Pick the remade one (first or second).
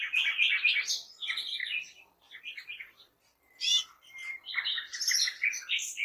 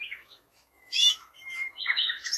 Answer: second